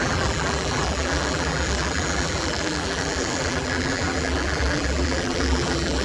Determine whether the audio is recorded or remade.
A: remade